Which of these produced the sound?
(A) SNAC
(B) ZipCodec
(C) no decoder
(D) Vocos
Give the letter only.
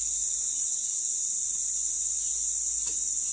C